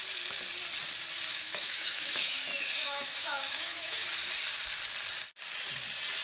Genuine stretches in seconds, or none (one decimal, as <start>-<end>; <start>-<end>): 0.0-1.3; 2.4-2.8; 4.1-6.2